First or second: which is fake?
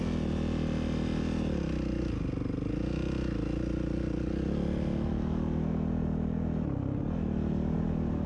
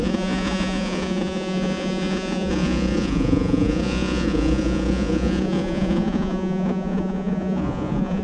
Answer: second